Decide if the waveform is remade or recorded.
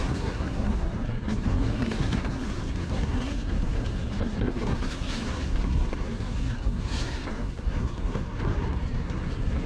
remade